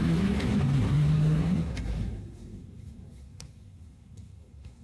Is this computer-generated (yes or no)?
yes